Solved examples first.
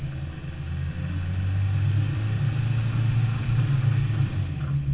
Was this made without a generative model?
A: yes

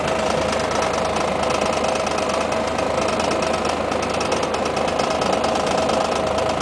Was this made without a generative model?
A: yes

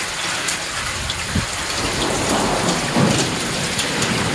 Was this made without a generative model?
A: yes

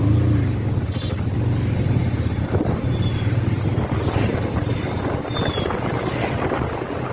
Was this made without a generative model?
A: yes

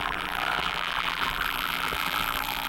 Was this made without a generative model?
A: no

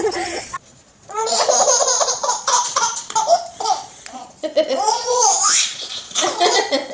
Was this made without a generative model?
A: no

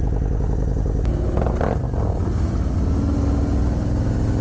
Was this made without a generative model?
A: yes